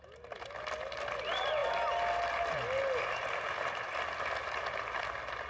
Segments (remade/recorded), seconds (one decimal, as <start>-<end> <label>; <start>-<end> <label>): 0.0-5.5 recorded